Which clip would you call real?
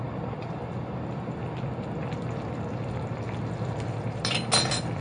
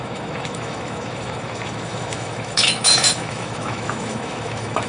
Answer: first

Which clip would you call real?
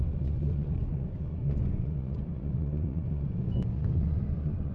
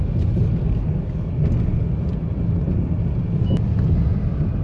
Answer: second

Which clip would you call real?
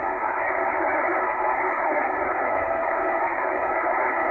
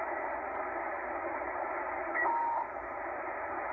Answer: second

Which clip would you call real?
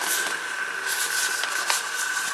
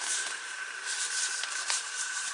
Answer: first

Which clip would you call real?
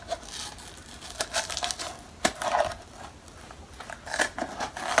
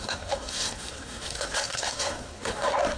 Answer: first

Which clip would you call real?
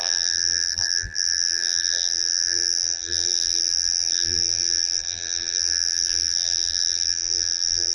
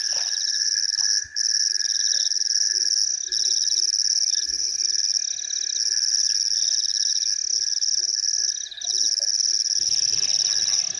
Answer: second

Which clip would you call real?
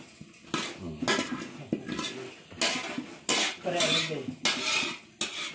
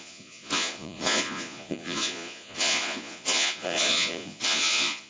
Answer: first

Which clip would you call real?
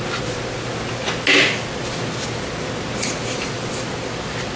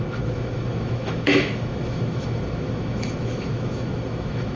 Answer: first